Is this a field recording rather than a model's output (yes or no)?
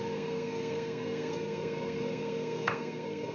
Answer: no